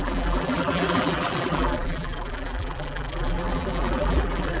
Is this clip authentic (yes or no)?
no